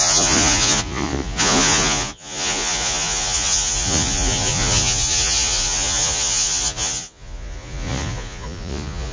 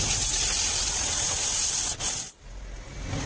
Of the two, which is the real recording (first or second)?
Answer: second